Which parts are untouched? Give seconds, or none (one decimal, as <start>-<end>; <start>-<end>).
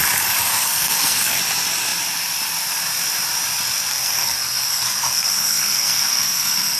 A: 0.0-0.5; 1.4-3.9